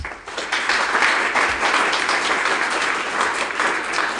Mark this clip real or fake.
real